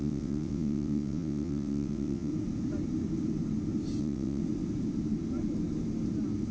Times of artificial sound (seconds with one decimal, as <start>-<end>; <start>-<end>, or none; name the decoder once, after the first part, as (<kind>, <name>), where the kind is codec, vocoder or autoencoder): 0.0-2.3 (vocoder, WaveNeXt); 4.0-4.4